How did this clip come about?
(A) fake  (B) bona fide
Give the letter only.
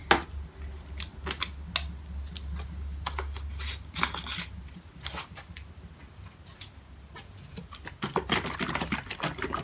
B